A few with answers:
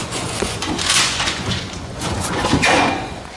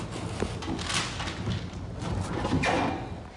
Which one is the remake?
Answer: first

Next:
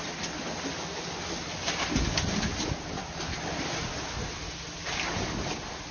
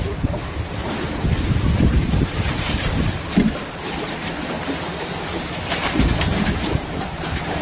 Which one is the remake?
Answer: second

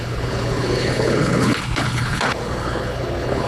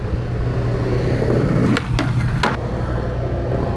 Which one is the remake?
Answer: first